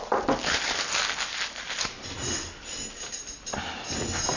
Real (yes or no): yes